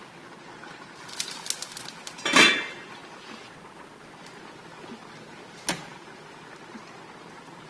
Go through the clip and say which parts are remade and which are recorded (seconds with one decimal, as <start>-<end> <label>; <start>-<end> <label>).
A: 0.0-7.7 recorded